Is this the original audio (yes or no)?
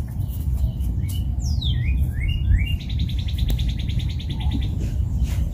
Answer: yes